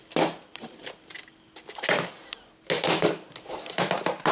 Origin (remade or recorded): recorded